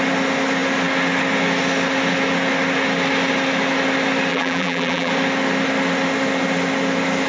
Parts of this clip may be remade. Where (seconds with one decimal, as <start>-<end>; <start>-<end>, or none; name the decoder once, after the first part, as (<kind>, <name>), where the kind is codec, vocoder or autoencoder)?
4.3-5.1 (vocoder, BigVGAN v2)